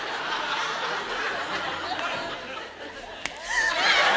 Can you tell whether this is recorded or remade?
recorded